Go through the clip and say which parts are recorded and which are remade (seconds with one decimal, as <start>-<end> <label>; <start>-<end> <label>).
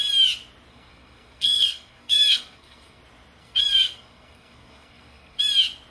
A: 0.0-0.7 recorded; 0.7-3.0 remade; 3.0-3.4 recorded; 3.4-5.4 remade; 5.4-5.9 recorded